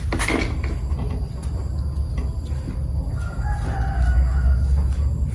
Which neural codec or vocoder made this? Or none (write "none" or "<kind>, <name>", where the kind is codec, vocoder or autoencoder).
none